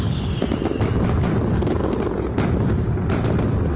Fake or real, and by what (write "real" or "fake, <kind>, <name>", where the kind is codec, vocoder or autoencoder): real